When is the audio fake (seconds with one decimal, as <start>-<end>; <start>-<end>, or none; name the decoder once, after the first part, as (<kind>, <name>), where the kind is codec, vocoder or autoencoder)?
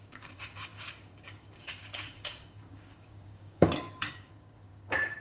0.0-5.2 (codec, DAC)